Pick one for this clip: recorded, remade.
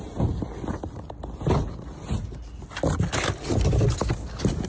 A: recorded